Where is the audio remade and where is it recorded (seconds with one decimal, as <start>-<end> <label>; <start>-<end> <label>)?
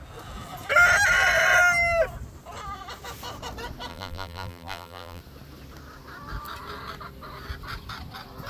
0.0-3.9 recorded; 3.9-5.2 remade; 5.2-8.5 recorded